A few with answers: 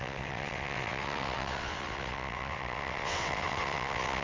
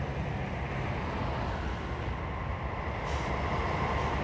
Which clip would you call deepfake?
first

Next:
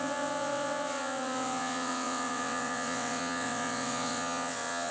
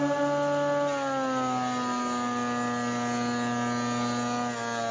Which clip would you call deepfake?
first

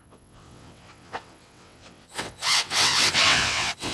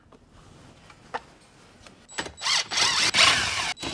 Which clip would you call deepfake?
first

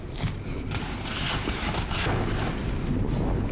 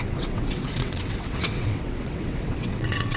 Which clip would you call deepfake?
second